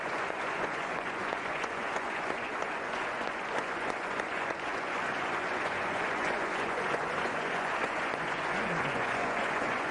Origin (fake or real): fake